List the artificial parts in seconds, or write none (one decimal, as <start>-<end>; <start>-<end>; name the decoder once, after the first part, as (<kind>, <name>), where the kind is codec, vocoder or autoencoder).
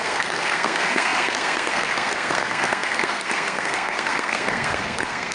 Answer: 0.0-5.3 (codec, SNAC)